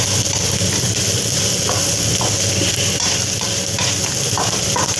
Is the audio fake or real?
real